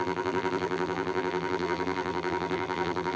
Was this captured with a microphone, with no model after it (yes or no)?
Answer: no